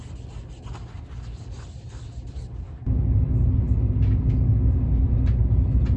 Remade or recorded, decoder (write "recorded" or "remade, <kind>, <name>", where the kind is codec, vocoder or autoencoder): recorded